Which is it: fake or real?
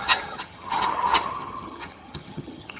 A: fake